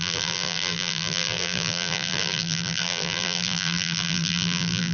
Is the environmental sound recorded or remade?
remade